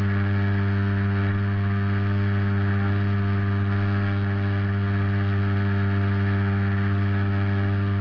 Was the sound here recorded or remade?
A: recorded